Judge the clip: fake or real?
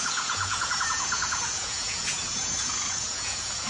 fake